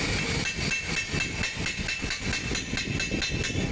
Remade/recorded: recorded